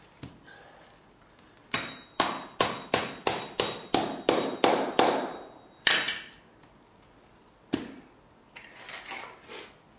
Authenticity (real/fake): real